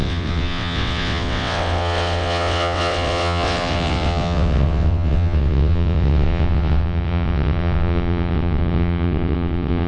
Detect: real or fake fake